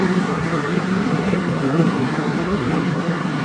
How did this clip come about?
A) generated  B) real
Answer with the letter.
A